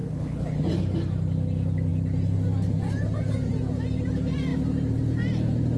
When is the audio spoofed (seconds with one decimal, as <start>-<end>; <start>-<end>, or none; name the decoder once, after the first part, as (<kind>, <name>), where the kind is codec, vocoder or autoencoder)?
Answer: 0.0-0.6 (codec, HILCodec)